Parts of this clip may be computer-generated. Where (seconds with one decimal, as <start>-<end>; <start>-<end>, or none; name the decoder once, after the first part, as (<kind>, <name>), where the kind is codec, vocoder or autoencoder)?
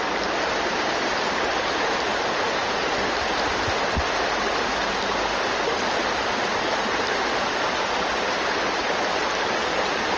none